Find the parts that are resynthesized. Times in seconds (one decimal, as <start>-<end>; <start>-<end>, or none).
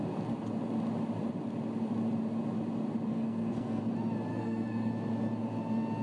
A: 3.1-3.8; 4.3-4.9